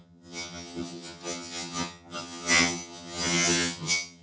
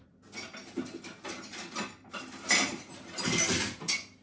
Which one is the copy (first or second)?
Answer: first